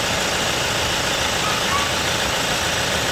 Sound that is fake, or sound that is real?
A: real